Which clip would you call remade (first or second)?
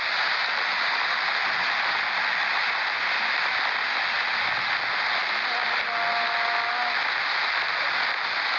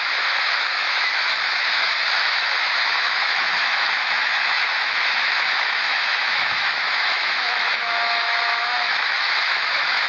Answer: second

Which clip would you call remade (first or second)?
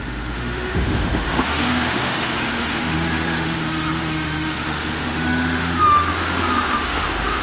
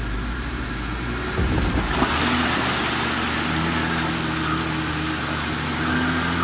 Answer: first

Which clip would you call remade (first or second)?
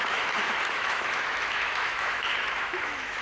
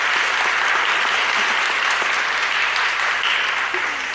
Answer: first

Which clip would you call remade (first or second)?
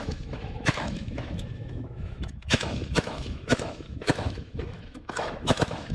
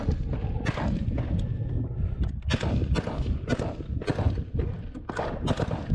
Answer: first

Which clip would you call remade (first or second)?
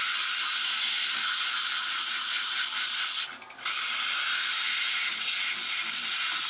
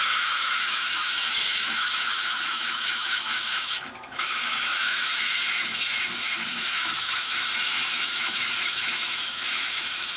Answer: second